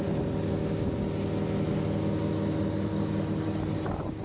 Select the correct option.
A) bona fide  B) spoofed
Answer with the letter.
A